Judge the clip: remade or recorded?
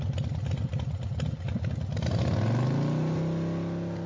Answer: recorded